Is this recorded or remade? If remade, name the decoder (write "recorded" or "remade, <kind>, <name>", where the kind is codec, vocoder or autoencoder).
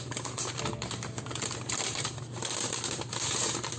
remade, vocoder, BigVGAN v2